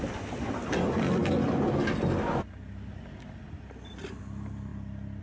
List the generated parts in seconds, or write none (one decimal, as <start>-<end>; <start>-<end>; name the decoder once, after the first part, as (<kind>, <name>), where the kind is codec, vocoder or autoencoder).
none